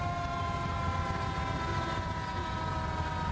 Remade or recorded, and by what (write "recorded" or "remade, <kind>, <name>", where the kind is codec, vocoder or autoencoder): recorded